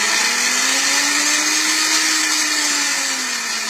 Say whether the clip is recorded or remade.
recorded